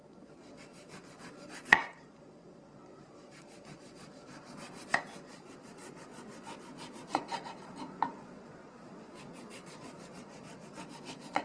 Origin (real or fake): fake